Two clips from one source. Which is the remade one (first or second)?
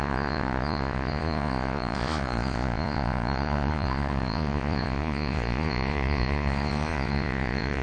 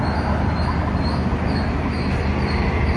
first